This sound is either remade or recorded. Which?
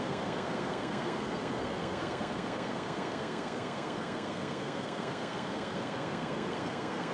remade